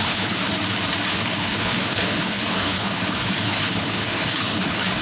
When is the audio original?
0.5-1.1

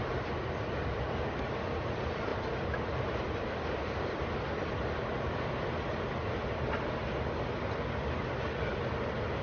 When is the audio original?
0.0-2.3; 4.3-9.4

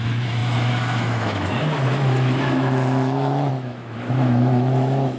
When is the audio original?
none

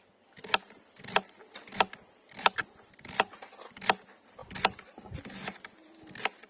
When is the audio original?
0.0-6.5

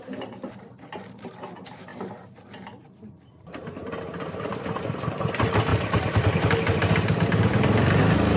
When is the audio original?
0.0-1.9; 3.9-4.5; 5.1-8.4

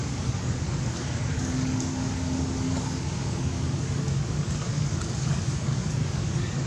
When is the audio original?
none